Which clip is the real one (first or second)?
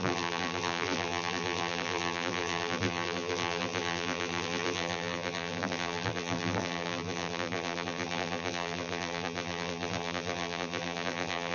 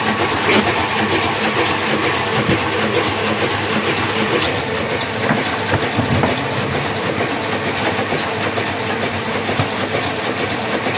second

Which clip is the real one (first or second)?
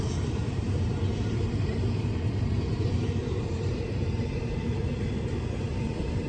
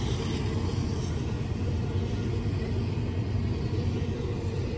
second